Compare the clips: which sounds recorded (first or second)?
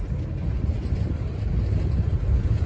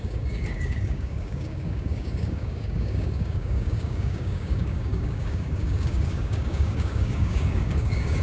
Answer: first